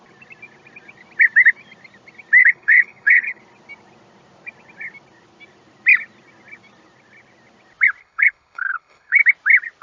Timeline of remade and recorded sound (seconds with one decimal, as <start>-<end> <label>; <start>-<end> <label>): 0.0-2.4 recorded; 2.4-3.4 remade; 3.4-8.0 recorded; 8.0-9.2 remade; 9.2-9.8 recorded